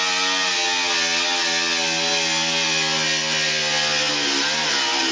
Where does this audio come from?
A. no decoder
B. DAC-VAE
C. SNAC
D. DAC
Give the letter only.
A